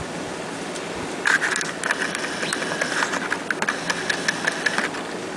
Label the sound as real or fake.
real